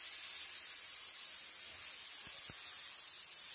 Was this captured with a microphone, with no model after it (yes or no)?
yes